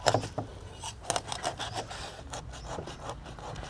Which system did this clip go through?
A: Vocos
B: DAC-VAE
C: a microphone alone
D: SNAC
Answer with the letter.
C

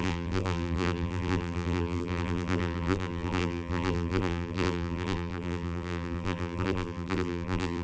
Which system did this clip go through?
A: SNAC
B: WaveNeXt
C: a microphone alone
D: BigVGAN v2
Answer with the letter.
D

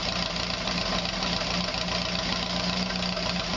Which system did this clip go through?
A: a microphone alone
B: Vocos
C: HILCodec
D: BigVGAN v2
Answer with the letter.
A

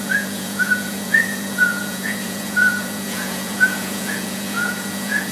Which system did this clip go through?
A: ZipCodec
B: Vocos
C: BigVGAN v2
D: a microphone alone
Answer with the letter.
B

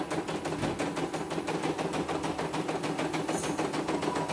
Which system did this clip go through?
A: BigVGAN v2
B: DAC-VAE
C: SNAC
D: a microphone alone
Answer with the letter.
D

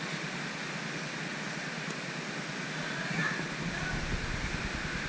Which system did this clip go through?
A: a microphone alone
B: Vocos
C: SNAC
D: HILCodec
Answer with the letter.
A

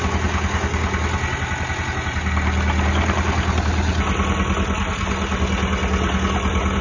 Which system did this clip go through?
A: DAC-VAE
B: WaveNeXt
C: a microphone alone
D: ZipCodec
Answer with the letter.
C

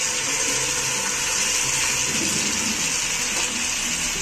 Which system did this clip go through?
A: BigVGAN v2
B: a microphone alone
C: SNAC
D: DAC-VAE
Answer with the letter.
B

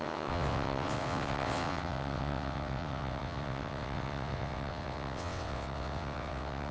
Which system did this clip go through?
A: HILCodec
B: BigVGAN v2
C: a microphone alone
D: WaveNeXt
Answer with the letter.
D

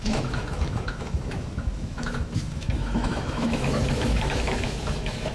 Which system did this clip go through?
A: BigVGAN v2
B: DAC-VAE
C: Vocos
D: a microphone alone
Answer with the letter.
B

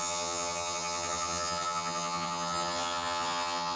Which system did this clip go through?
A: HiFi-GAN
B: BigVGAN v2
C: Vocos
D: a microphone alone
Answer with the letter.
A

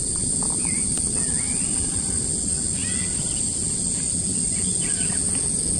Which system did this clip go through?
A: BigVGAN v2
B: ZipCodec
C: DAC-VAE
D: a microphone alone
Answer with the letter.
D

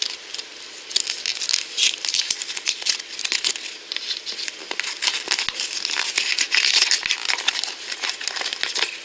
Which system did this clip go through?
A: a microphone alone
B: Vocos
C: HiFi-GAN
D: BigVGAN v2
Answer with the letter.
A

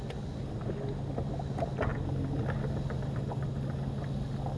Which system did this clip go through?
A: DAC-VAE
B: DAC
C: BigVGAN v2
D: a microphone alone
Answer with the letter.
D